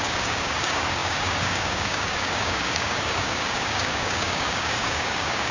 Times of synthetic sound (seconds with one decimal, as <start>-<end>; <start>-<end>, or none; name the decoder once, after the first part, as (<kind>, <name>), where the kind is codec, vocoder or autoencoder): 0.0-5.5 (codec, DAC)